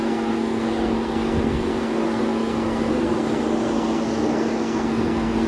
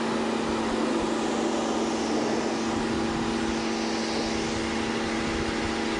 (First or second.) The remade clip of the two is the first